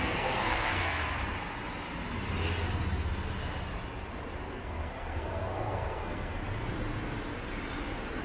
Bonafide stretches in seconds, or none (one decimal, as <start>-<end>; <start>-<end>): 1.0-4.5; 6.4-8.2